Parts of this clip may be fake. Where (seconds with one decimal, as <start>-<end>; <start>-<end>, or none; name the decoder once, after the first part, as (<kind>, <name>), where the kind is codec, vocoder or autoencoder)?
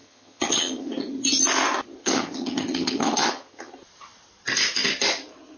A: 0.0-0.9 (vocoder, HiFi-GAN); 2.0-3.7